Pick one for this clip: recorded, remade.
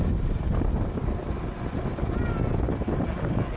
recorded